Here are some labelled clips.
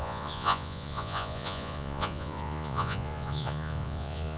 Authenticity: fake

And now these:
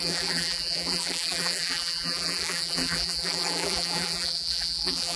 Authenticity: fake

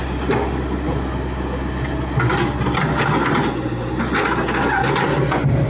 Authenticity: real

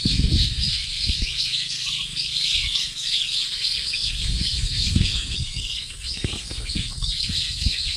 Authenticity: fake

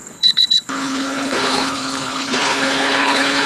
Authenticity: fake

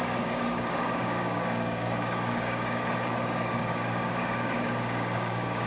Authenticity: fake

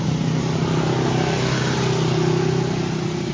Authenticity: real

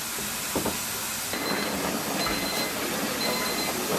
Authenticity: real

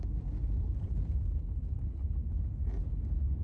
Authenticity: real